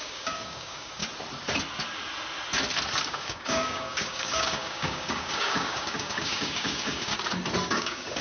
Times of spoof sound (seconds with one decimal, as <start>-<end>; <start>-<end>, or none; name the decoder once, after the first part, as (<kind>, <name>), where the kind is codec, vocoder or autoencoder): 0.0-1.0 (codec, DAC); 3.0-7.1; 7.7-8.2

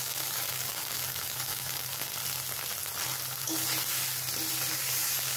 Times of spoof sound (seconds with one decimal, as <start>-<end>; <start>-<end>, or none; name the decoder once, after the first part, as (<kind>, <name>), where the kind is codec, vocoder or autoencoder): 0.0-2.0 (codec, DAC); 4.7-5.4

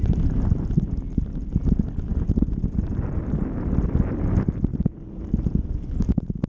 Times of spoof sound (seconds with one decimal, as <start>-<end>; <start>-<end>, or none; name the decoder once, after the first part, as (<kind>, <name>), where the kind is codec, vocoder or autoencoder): none

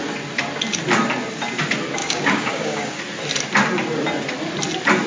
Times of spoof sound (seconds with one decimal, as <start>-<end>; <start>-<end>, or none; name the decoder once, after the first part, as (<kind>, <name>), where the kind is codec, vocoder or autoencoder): 2.0-3.0 (codec, DAC)

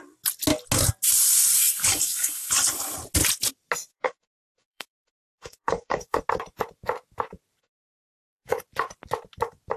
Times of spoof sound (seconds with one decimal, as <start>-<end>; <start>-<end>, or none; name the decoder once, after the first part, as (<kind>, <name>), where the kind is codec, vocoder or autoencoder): 1.9-2.5 (codec, DAC); 3.9-6.2; 7.6-8.6

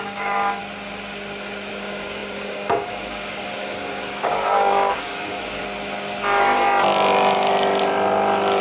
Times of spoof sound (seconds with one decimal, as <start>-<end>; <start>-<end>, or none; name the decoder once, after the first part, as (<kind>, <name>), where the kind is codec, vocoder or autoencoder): 0.0-0.6 (codec, DAC); 1.7-5.6

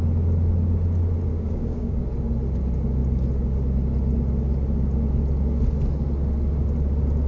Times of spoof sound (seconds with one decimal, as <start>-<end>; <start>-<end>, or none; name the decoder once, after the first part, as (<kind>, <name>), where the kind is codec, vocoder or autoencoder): 1.3-2.0 (codec, DAC)

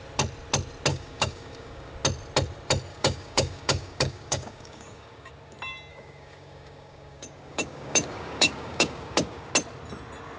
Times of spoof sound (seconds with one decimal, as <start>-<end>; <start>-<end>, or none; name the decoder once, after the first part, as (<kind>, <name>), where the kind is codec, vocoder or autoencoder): 0.9-1.9 (codec, DAC); 2.9-5.3; 5.9-9.5